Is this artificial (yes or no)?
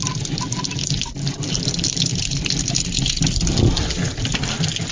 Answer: no